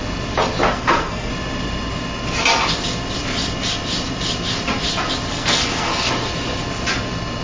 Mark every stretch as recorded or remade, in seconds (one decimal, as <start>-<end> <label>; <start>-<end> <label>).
0.0-0.7 recorded; 0.7-1.3 remade; 1.3-5.3 recorded; 5.3-6.1 remade; 6.1-7.4 recorded

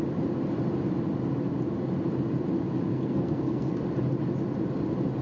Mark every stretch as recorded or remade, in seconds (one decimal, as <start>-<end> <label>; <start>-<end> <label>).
0.0-2.9 recorded; 2.9-3.8 remade; 3.8-5.2 recorded